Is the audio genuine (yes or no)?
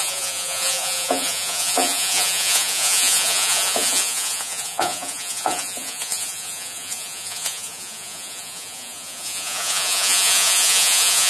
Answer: no